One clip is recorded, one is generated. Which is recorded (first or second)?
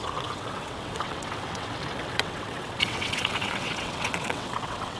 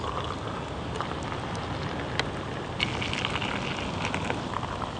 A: second